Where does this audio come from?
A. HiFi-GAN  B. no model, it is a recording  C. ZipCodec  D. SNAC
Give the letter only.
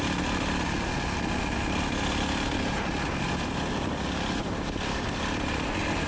B